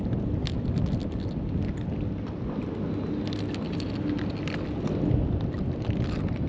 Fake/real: real